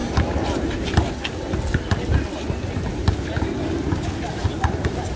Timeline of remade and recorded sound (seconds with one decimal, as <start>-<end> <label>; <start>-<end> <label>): 0.0-4.4 recorded; 4.4-5.2 remade